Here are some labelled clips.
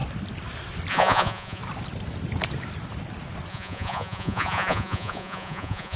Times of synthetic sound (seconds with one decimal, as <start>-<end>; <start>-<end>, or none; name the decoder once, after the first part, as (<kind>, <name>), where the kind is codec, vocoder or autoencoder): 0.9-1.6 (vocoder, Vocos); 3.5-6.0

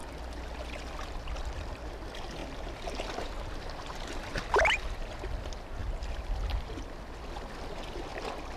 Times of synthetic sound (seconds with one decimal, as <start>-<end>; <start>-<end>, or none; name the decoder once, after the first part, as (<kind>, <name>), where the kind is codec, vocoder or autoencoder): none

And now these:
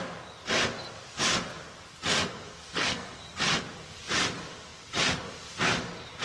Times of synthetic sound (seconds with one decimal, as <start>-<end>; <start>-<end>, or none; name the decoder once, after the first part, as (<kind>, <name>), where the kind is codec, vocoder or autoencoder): 2.3-3.2 (codec, SNAC)

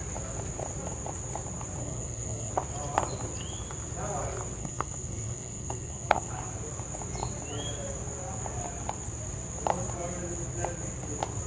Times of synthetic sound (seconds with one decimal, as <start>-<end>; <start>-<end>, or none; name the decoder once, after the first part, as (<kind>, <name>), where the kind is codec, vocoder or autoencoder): 1.8-2.5 (codec, SNAC); 4.6-6.3

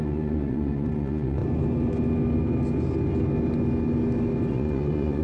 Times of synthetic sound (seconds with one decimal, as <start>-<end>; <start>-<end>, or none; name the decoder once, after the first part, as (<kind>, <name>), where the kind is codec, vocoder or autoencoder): 0.0-1.4 (vocoder, Vocos); 4.5-5.2

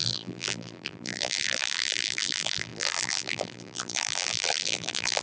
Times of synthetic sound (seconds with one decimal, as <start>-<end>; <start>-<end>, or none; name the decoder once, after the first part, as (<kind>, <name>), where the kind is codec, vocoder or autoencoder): 0.0-5.2 (vocoder, BigVGAN v2)

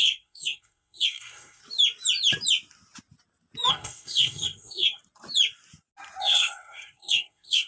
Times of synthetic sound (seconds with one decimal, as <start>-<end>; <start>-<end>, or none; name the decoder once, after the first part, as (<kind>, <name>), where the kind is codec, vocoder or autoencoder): 0.0-1.6 (codec, SNAC); 3.7-5.0; 6.2-7.7